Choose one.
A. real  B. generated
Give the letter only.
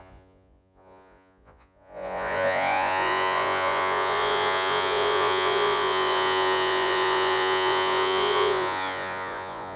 B